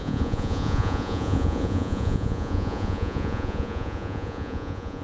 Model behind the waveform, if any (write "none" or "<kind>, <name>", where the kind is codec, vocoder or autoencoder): vocoder, Vocos